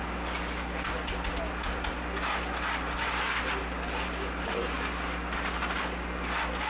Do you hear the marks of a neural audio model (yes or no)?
no